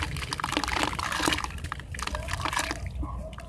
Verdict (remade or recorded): recorded